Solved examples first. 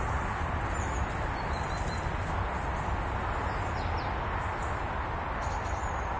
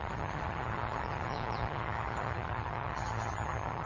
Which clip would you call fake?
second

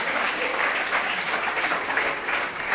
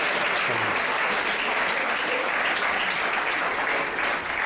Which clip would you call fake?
first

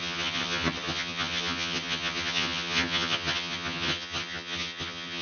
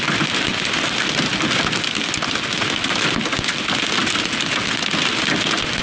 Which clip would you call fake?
first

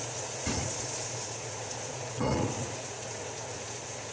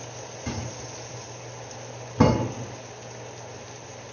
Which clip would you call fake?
first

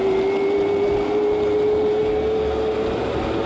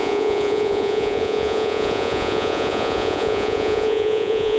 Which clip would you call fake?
second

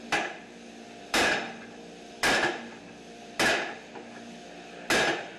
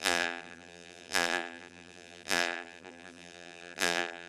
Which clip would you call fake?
second